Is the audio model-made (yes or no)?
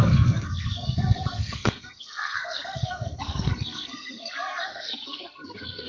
yes